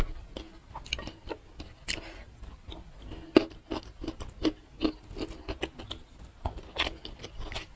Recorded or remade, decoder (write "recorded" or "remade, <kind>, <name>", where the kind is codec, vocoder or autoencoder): recorded